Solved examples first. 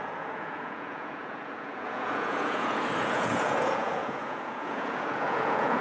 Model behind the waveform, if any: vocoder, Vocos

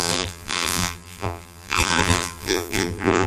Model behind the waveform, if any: vocoder, BigVGAN v2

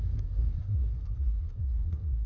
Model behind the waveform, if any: codec, SNAC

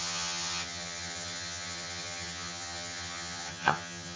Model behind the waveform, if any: vocoder, HiFi-GAN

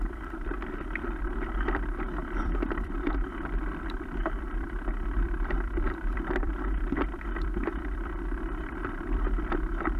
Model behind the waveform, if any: vocoder, BigVGAN v2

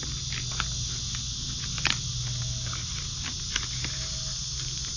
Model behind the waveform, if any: none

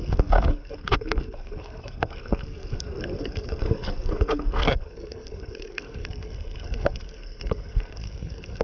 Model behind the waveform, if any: codec, SNAC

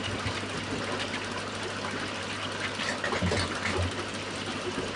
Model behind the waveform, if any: none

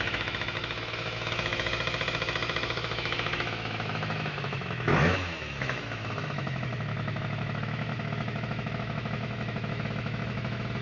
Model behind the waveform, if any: autoencoder, DAC-VAE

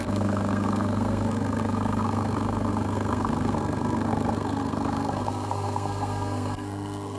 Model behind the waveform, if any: codec, SNAC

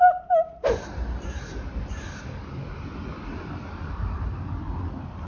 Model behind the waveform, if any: none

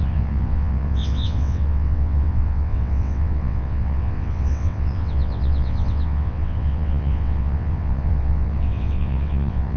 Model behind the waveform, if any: vocoder, WaveNeXt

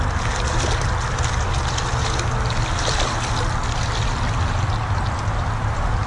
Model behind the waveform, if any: none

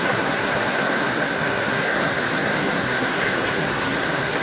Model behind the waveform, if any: codec, SNAC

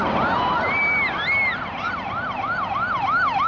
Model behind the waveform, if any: none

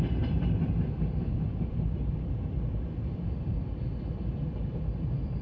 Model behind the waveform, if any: vocoder, BigVGAN v2